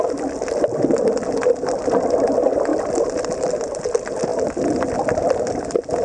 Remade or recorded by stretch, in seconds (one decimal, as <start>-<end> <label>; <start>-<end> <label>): 0.0-6.0 recorded